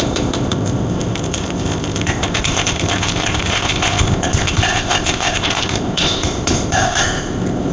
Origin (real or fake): fake